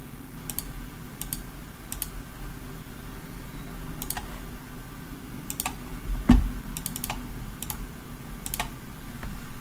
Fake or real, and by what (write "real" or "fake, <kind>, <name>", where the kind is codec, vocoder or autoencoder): real